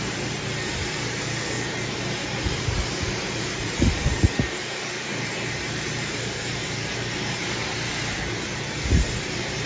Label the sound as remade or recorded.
remade